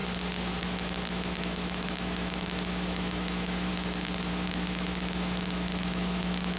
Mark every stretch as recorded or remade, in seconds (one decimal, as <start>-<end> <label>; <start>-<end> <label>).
0.0-0.6 recorded; 0.6-3.7 remade; 3.7-4.3 recorded; 4.3-6.6 remade